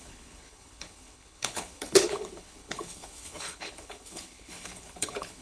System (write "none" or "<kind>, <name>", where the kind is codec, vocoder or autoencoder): codec, HILCodec